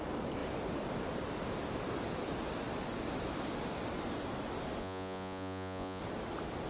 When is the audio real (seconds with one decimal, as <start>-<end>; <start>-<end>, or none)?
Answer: 0.0-4.8; 6.0-6.7